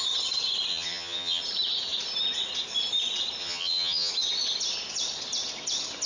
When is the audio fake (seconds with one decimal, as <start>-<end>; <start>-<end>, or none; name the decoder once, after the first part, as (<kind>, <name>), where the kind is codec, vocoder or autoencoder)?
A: 0.7-1.4 (vocoder, HiFi-GAN); 3.4-4.1